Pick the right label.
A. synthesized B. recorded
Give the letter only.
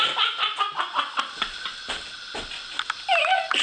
B